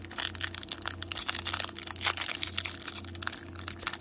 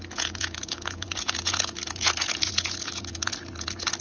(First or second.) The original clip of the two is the first